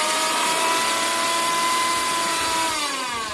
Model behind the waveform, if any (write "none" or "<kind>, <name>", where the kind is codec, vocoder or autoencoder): vocoder, BigVGAN v2